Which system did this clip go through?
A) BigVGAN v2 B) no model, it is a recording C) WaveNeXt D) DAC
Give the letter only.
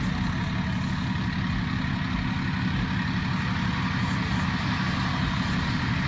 B